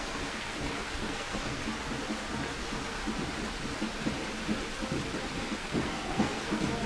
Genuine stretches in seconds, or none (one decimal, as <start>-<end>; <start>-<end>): 1.6-2.6; 3.0-5.4